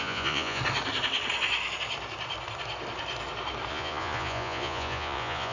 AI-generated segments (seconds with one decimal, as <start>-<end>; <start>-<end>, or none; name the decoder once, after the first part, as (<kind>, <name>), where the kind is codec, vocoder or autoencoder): 0.0-0.6 (vocoder, Vocos); 3.7-5.5